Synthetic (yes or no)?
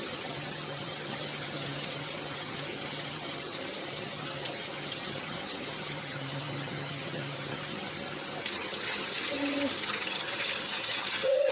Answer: yes